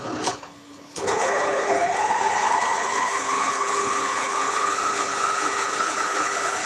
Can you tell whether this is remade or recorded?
remade